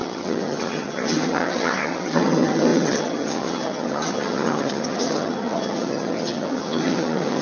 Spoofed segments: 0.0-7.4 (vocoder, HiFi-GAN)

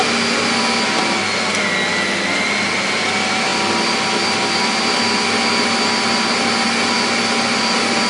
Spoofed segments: none

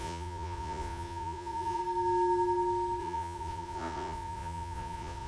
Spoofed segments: 0.0-1.8 (vocoder, Vocos); 3.0-5.3

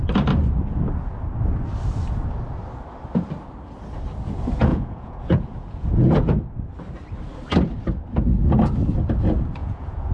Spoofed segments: 4.7-6.4 (vocoder, Vocos); 9.6-10.1

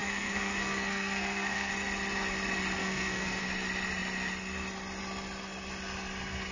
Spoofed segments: 0.0-1.7 (codec, SNAC); 2.8-3.4

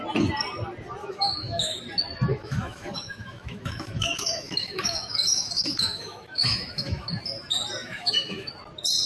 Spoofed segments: 1.0-1.8 (autoencoder, DAC-VAE); 2.3-7.1; 7.8-8.5